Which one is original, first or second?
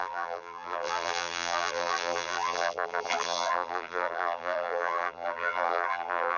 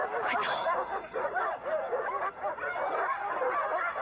second